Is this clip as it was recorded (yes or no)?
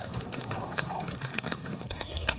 no